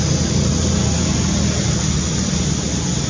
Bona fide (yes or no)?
yes